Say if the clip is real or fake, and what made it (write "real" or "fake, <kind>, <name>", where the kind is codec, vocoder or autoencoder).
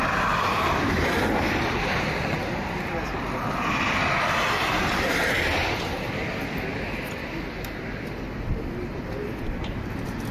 real